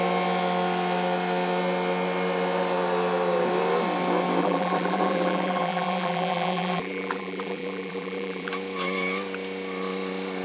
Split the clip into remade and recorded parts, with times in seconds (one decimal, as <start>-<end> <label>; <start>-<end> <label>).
0.0-4.4 recorded; 4.4-8.5 remade; 8.5-10.4 recorded